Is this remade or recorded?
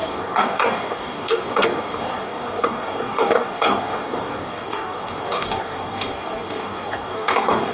remade